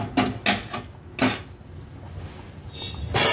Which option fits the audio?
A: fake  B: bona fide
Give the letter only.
B